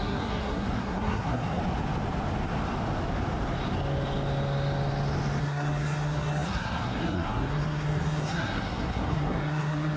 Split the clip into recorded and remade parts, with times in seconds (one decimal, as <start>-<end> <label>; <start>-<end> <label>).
0.0-1.6 remade; 1.6-5.4 recorded; 5.4-10.0 remade